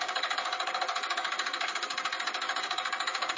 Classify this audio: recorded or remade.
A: remade